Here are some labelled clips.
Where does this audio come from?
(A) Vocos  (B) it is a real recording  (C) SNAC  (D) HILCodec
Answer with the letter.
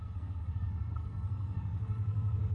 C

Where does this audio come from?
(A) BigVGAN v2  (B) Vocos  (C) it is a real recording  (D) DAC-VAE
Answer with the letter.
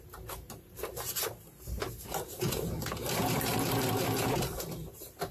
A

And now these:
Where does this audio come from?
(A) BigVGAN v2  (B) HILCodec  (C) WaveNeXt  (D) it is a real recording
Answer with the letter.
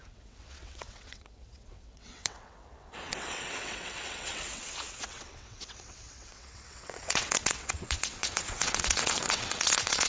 C